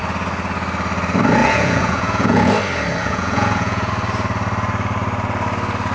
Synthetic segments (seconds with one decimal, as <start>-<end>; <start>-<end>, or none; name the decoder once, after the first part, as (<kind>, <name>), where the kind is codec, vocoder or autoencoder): 1.4-2.5 (vocoder, Vocos); 3.0-3.9

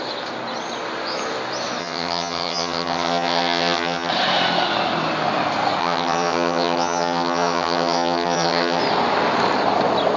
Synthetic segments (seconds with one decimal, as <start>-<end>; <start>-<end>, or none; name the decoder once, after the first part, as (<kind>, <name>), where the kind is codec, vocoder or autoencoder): 1.8-4.1 (vocoder, HiFi-GAN); 5.8-8.8